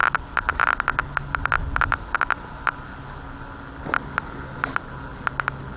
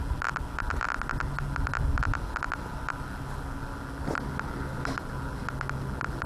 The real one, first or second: second